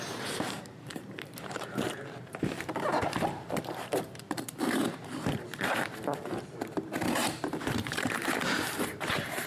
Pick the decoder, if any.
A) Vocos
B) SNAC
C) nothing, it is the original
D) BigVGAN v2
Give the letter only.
D